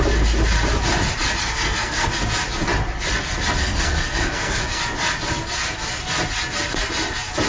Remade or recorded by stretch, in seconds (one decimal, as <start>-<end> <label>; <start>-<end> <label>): 0.0-1.4 recorded; 1.4-2.2 remade; 2.2-3.6 recorded; 3.6-4.8 remade; 4.8-7.5 recorded